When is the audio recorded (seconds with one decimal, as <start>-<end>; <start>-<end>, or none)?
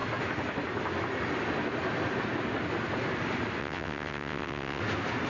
0.0-3.6; 4.8-5.3